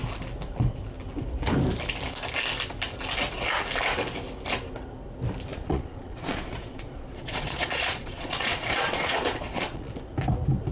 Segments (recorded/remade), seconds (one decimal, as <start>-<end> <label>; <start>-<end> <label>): 0.0-5.5 recorded; 5.5-9.9 remade; 9.9-10.7 recorded